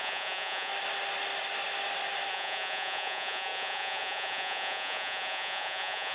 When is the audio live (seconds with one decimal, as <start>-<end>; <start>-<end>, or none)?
0.7-2.3